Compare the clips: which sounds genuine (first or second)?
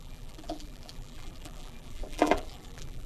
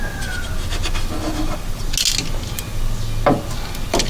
second